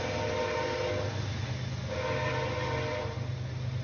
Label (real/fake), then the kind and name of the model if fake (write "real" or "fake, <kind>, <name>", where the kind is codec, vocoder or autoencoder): real